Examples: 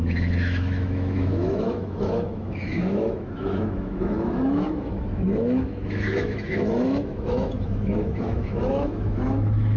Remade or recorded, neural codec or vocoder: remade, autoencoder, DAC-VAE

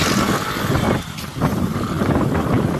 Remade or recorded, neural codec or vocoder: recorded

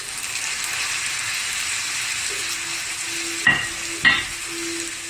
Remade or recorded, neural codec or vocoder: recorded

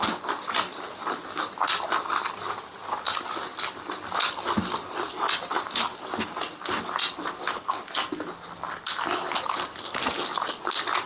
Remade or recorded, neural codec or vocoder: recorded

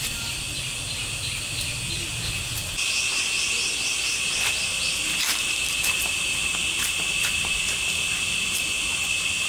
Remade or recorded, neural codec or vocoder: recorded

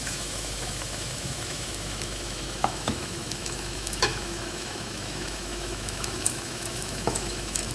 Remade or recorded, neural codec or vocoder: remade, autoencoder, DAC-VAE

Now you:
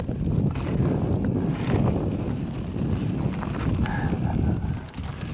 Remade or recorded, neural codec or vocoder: recorded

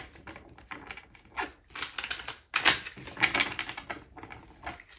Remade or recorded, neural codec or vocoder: recorded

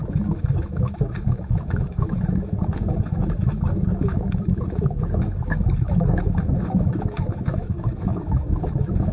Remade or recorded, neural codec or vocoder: remade, autoencoder, DAC-VAE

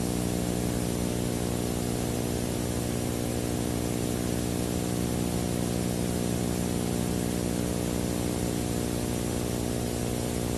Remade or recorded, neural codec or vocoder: recorded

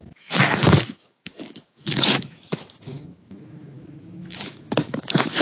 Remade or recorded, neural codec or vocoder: remade, autoencoder, DAC-VAE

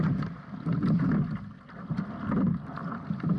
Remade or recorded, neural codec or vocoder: recorded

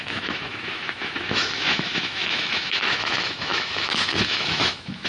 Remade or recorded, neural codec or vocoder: remade, autoencoder, DAC-VAE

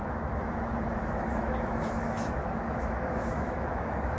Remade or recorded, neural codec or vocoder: remade, autoencoder, DAC-VAE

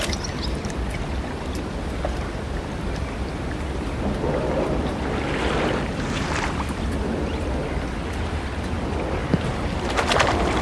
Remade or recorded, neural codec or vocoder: recorded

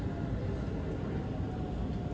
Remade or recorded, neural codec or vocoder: recorded